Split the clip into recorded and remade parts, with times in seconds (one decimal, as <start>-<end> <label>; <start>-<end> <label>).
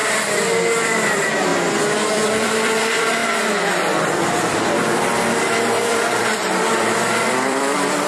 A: 0.0-0.8 recorded; 0.8-1.5 remade; 1.5-2.1 recorded; 2.1-8.1 remade